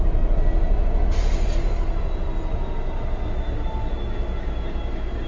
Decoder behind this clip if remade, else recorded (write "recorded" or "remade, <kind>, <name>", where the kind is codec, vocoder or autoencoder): recorded